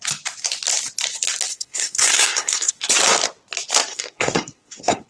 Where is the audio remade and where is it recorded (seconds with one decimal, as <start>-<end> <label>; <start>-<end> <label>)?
0.0-1.5 recorded; 1.5-2.7 remade; 2.7-3.9 recorded; 3.9-5.1 remade